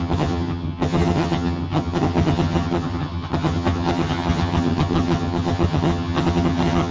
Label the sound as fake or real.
fake